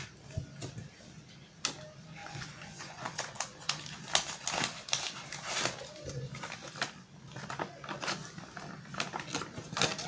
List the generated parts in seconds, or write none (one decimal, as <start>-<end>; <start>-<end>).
2.2-3.8